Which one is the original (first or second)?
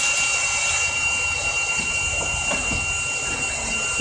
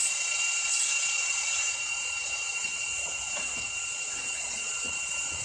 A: first